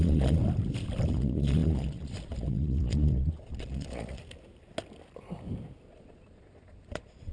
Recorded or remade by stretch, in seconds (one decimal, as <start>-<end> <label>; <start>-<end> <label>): 0.0-0.4 remade; 0.4-1.1 recorded; 1.1-4.2 remade; 4.2-5.9 recorded; 5.9-7.3 remade